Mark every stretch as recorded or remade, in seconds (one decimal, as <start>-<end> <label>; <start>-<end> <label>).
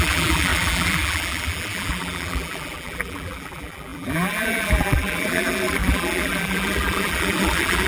0.0-7.9 remade